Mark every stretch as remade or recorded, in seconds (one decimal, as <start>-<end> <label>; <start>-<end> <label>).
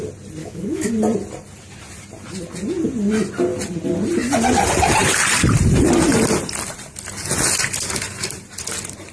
0.0-0.4 recorded; 0.4-0.9 remade; 0.9-9.1 recorded